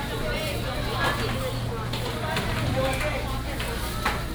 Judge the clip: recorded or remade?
recorded